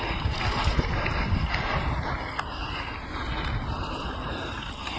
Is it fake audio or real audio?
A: real